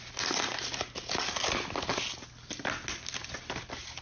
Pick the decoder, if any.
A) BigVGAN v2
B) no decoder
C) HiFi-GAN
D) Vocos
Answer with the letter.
B